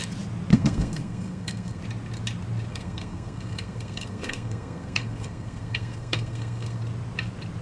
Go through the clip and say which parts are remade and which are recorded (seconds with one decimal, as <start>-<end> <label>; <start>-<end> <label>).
0.0-0.5 recorded; 0.5-1.8 remade; 1.8-2.7 recorded; 2.7-6.8 remade; 6.8-7.6 recorded